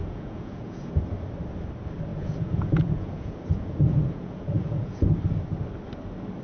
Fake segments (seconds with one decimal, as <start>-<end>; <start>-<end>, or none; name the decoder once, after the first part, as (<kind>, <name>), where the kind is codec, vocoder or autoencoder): 0.0-1.0 (vocoder, Vocos); 2.1-5.1